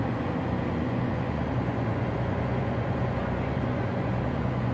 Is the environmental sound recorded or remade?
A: remade